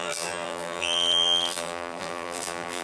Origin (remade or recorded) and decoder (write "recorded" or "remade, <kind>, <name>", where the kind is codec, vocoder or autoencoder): remade, vocoder, BigVGAN v2